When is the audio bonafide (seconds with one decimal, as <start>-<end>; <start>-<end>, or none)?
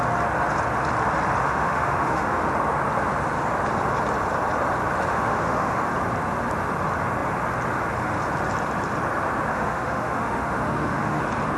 0.0-1.4; 2.5-5.1; 5.8-9.5; 11.2-11.6